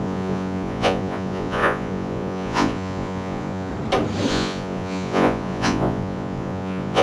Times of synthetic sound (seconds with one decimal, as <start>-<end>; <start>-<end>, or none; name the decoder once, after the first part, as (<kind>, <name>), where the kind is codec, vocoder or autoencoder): 0.0-3.7 (vocoder, Vocos); 4.3-7.0